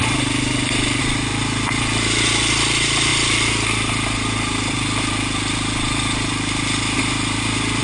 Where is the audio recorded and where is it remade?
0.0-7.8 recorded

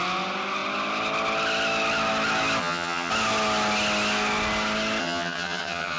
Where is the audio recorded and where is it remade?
0.0-2.6 recorded; 2.6-3.1 remade; 3.1-5.0 recorded; 5.0-6.0 remade

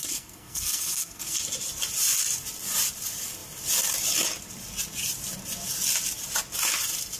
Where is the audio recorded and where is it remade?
0.0-1.4 remade; 1.4-7.2 recorded

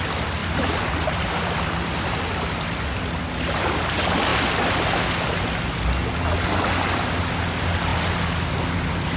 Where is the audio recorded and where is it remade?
0.0-0.4 recorded; 0.4-3.0 remade; 3.0-9.2 recorded